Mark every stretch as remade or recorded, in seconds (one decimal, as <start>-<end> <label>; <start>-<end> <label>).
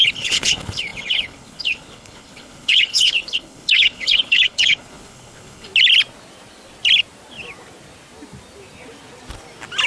0.0-5.7 remade; 5.7-9.9 recorded